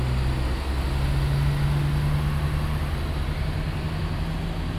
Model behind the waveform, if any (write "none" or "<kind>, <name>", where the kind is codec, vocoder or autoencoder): none